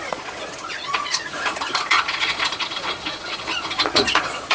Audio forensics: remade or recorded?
remade